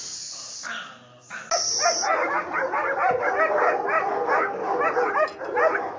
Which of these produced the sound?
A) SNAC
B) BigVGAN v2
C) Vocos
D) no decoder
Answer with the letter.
D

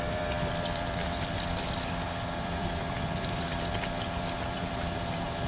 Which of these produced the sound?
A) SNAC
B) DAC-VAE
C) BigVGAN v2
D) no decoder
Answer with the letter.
C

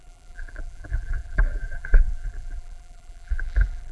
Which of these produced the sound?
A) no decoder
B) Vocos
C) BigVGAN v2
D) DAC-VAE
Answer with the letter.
C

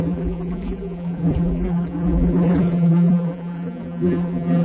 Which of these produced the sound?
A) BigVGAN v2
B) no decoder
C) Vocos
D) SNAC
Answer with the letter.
A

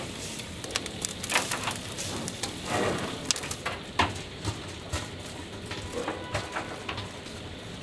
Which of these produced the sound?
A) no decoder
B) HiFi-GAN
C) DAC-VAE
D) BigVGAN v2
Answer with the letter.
A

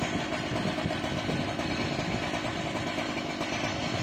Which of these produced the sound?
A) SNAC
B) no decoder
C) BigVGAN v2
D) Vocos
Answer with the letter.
B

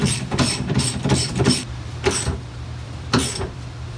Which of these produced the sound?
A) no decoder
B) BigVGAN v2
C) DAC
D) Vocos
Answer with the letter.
B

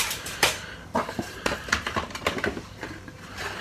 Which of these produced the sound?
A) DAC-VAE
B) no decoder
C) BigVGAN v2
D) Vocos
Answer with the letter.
B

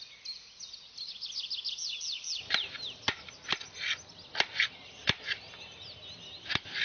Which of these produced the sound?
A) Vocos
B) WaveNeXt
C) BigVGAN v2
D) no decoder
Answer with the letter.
D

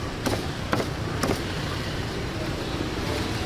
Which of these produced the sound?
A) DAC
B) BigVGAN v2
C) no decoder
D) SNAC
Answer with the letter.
B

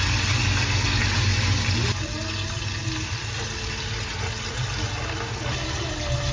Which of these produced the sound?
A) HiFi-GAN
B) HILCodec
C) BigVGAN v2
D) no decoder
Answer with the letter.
D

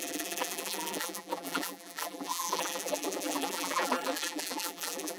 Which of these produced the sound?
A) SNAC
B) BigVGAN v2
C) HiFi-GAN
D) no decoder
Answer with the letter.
B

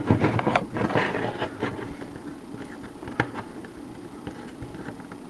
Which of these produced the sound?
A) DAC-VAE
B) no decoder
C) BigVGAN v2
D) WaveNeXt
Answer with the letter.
B